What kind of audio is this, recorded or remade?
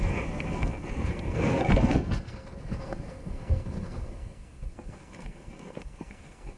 remade